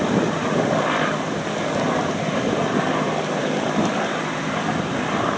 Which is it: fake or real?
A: fake